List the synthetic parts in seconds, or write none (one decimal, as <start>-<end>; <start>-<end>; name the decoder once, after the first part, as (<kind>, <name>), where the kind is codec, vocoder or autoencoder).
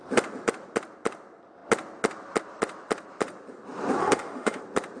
4.0-4.6 (autoencoder, DAC-VAE)